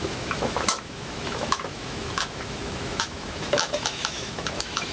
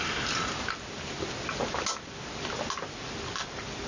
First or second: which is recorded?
second